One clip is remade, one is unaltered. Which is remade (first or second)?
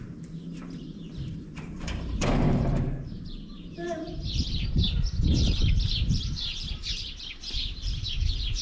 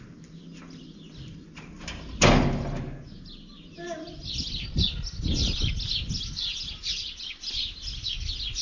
first